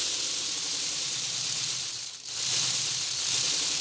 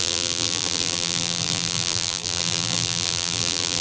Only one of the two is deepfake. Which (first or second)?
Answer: second